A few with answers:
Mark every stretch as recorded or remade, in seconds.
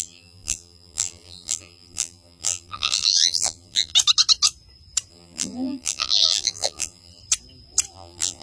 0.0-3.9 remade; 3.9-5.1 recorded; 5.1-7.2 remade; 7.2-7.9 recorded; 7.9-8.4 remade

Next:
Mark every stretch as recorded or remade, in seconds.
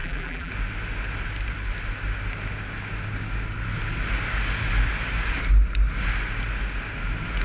0.0-0.5 remade; 0.5-7.4 recorded